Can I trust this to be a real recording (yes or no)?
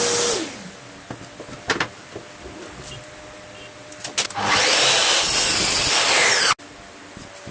yes